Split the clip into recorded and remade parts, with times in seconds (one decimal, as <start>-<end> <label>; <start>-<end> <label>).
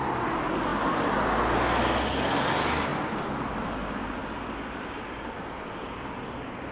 0.0-6.7 recorded